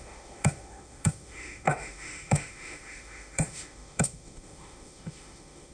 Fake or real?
fake